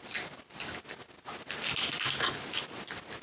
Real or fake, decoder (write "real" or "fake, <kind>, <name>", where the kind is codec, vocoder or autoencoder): real